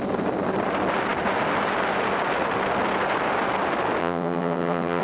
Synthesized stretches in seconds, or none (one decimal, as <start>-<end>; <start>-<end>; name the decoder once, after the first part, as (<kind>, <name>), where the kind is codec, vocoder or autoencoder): 4.0-5.0 (vocoder, HiFi-GAN)